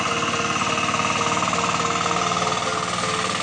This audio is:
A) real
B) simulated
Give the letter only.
A